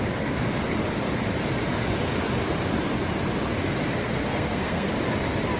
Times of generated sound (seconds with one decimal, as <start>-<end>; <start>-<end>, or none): 4.0-4.9